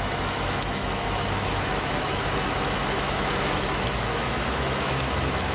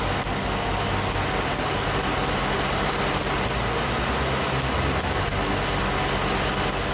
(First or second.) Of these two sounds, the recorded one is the second